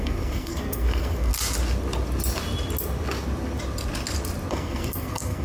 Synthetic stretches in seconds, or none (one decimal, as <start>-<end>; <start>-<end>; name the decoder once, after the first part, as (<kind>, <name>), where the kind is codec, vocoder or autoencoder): 0.0-1.3 (codec, SNAC); 4.5-5.4